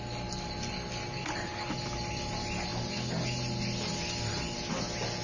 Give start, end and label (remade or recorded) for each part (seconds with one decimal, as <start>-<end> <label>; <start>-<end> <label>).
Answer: 0.0-5.2 recorded